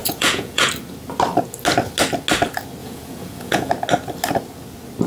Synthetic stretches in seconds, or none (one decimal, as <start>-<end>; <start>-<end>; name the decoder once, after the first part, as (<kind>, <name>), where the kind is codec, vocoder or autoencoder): 0.0-0.7 (vocoder, Vocos); 2.8-3.7